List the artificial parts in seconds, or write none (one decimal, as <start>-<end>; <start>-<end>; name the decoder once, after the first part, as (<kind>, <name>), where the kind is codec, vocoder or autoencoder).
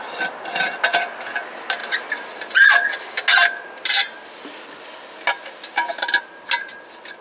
none